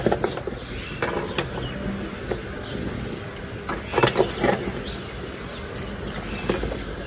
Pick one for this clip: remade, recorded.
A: recorded